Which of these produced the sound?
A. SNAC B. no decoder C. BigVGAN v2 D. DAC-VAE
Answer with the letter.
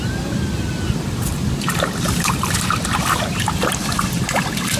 B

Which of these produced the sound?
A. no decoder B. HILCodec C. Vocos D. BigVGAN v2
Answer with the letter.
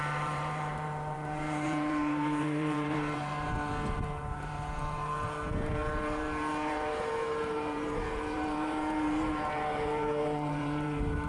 D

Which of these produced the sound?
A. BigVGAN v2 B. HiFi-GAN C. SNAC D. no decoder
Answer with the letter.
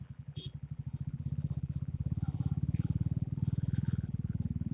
A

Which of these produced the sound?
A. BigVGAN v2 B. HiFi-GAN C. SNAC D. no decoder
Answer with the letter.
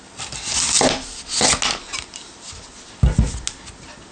D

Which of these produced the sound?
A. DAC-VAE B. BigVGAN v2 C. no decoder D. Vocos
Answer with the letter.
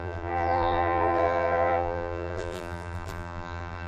B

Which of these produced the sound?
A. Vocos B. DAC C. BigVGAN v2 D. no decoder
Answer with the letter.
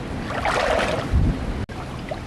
D